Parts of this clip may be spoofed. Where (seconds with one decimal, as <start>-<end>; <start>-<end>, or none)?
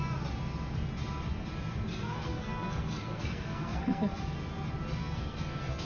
1.9-4.2; 5.0-5.8